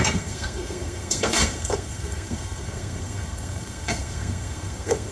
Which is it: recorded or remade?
remade